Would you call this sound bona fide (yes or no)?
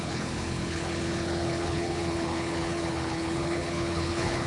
no